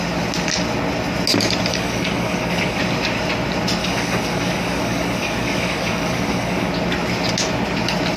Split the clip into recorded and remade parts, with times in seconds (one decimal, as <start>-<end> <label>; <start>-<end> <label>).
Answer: 0.0-1.7 recorded; 1.7-2.8 remade; 2.8-3.8 recorded; 3.8-6.7 remade; 6.7-8.2 recorded